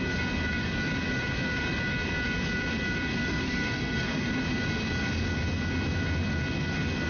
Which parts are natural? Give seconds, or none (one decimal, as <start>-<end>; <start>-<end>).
0.0-3.3; 4.3-7.1